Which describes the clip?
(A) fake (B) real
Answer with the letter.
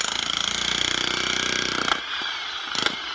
B